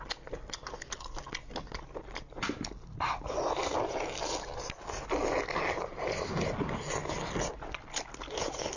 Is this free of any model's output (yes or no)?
yes